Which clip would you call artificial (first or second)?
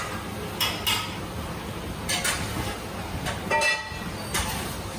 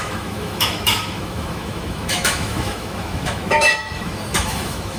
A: second